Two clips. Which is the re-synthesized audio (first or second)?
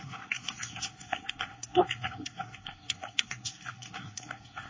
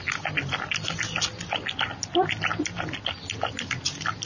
first